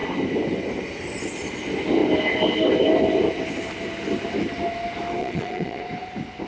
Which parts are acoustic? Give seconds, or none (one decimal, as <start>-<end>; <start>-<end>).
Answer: 0.0-5.2; 5.8-6.5